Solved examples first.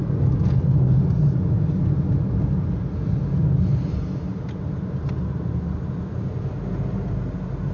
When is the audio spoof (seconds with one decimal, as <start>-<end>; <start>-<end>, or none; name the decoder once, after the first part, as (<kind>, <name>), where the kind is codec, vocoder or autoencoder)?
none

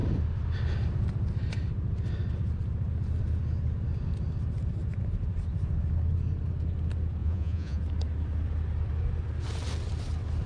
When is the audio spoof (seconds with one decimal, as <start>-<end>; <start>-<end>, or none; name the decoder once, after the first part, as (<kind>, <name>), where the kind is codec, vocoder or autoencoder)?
7.2-7.8 (vocoder, Vocos)

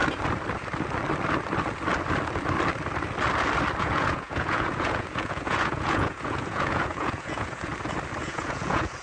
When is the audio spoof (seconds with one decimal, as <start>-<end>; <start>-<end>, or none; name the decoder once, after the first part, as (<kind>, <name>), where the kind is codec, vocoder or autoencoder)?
3.8-7.7 (vocoder, Vocos); 8.2-9.0